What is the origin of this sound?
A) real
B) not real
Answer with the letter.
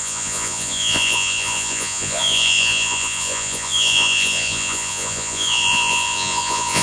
B